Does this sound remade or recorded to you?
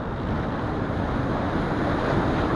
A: recorded